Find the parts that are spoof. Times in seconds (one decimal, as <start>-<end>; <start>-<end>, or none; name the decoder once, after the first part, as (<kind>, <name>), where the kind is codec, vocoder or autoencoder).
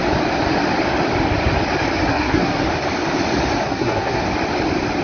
2.1-2.6 (codec, SNAC); 3.6-4.2